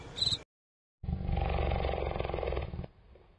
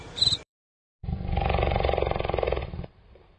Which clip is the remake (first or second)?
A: second